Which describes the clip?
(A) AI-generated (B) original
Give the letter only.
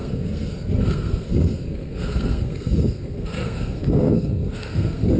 A